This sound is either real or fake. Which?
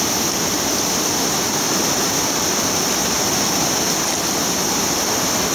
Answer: real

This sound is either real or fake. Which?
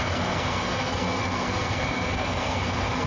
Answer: fake